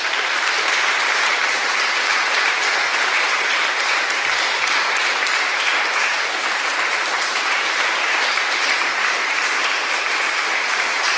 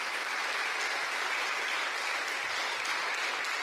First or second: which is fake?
first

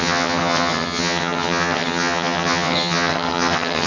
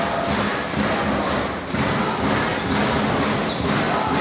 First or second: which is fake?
first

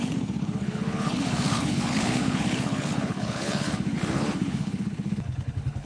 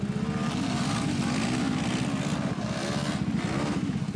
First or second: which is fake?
first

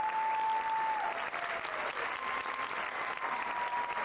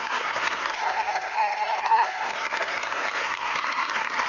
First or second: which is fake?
second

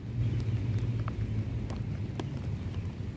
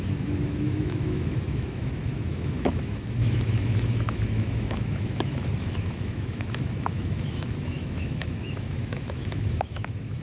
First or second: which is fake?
second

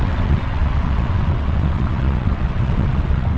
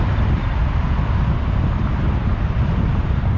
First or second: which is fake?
first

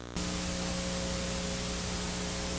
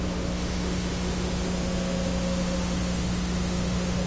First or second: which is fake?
second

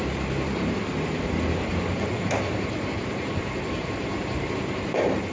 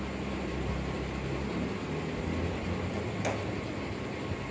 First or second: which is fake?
first